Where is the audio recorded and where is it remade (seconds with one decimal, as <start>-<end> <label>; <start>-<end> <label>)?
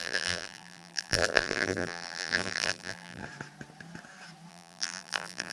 0.0-3.2 remade; 3.2-4.5 recorded; 4.5-5.5 remade